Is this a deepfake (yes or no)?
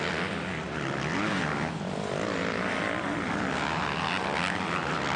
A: no